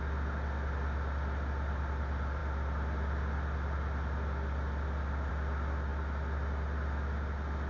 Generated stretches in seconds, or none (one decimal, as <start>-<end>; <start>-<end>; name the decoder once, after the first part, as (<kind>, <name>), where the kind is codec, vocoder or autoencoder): none